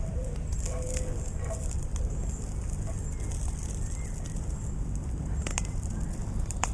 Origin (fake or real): real